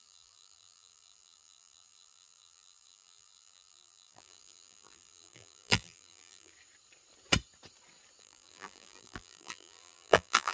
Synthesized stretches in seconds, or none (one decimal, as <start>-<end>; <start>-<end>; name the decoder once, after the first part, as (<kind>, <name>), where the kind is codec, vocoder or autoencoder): 0.0-6.5 (vocoder, BigVGAN v2); 8.2-10.5